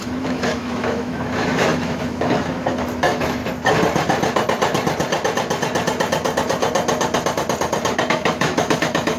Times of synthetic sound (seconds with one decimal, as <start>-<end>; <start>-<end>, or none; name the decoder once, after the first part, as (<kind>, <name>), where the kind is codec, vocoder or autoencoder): 0.0-3.4 (autoencoder, DAC-VAE); 8.1-9.2